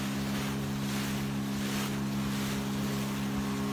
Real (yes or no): yes